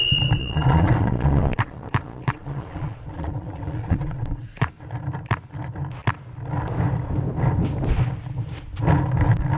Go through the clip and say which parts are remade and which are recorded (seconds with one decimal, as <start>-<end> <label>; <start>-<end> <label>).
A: 0.0-0.4 recorded; 0.4-4.7 remade; 4.7-9.6 recorded